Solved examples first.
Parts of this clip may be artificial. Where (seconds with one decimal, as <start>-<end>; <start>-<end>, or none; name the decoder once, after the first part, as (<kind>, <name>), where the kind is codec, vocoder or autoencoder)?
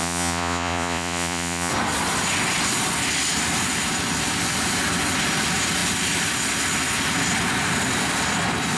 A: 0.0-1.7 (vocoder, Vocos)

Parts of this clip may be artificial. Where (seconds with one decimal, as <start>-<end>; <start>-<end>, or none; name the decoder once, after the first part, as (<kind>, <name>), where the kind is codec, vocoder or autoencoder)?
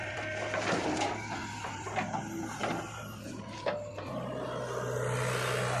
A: none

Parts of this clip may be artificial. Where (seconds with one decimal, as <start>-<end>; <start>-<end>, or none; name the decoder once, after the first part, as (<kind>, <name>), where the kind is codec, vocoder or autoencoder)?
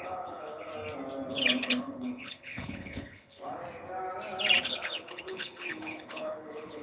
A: 0.0-0.7 (codec, HILCodec); 1.3-3.6; 4.6-6.8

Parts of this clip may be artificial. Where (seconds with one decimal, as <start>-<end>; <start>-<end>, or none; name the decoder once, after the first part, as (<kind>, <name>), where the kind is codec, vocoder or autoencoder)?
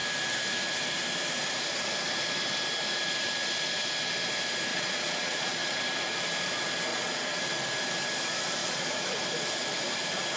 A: 4.7-5.8 (vocoder, Vocos); 6.9-7.4; 8.6-9.1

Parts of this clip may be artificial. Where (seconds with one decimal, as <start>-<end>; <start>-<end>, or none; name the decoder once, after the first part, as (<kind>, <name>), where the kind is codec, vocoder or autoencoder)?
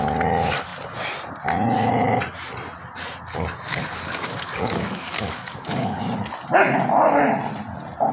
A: 3.7-6.0 (codec, DAC)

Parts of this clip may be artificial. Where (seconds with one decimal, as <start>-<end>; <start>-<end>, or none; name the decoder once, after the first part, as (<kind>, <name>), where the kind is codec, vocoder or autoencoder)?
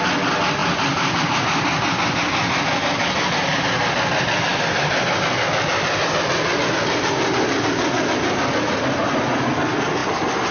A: none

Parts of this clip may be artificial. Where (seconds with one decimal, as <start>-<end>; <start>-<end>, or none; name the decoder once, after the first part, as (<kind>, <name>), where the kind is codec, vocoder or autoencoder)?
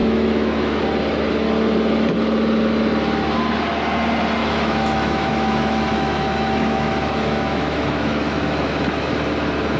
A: 0.0-0.8 (autoencoder, DAC-VAE); 4.4-9.1